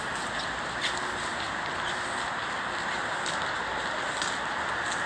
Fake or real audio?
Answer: real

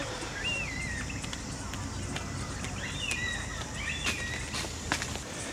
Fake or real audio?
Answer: real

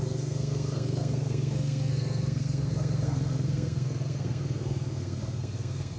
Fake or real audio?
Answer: fake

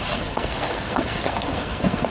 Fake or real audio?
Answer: fake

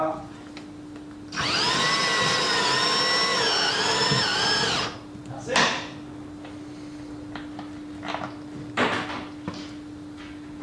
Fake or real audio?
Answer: real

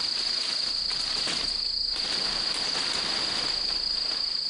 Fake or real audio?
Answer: real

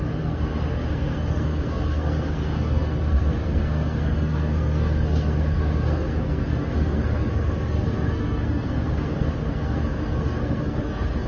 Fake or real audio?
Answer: fake